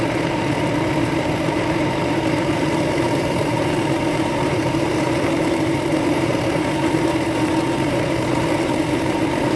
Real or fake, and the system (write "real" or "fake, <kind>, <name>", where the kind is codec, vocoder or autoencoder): fake, vocoder, BigVGAN v2